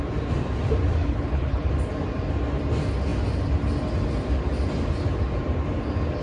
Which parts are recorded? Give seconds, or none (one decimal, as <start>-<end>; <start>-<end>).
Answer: 0.0-1.0; 1.7-6.2